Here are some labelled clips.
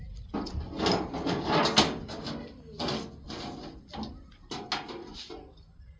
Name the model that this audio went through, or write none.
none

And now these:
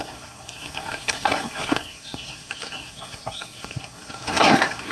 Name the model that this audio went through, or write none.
codec, SNAC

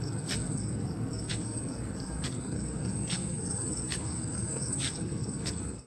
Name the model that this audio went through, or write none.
codec, SNAC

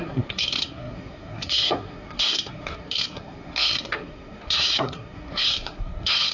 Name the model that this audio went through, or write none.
codec, SNAC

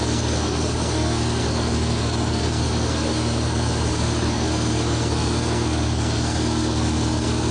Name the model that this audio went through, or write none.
codec, SNAC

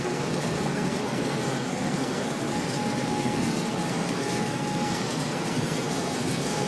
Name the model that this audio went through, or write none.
codec, SNAC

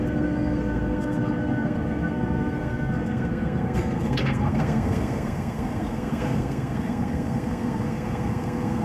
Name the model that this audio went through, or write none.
codec, SNAC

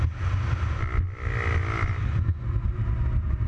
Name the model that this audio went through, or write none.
none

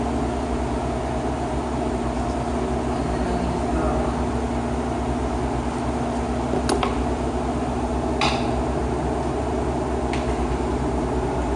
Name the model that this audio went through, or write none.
none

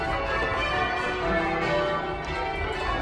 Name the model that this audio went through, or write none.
none